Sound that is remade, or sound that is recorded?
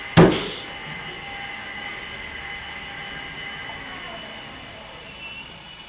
recorded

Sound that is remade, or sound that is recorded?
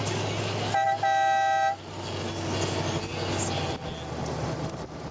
recorded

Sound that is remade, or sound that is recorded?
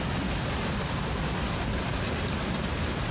remade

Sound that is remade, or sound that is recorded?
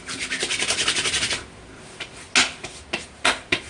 recorded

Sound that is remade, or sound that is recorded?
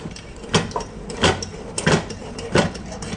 recorded